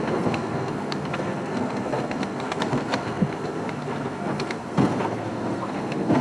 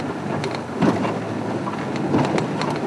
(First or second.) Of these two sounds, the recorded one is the second